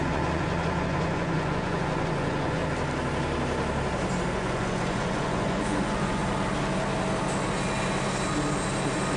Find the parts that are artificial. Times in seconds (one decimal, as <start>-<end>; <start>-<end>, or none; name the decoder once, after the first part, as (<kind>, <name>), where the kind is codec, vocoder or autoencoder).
0.0-2.6 (vocoder, Vocos); 4.3-6.2